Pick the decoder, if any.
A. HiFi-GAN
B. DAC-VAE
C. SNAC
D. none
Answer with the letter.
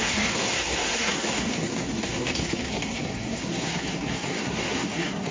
C